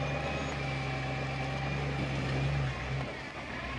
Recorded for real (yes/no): yes